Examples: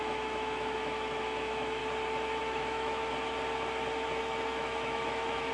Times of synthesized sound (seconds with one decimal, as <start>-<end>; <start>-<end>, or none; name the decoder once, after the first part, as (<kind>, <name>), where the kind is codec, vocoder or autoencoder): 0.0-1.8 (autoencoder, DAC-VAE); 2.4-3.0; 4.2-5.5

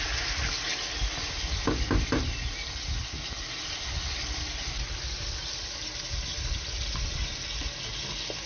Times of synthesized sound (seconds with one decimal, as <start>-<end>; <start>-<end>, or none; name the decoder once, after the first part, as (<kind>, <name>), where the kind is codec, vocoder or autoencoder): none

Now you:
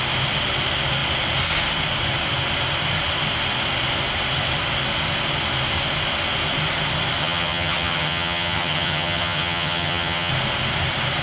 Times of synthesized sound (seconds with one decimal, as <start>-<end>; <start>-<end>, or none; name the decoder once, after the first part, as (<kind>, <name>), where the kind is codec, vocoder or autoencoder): 7.2-10.3 (vocoder, HiFi-GAN)